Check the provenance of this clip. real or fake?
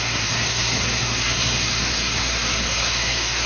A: fake